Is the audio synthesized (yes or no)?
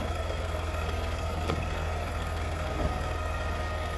yes